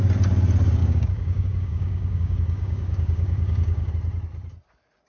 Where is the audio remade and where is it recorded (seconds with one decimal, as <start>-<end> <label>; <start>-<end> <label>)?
0.0-0.8 recorded; 0.8-3.9 remade; 3.9-5.1 recorded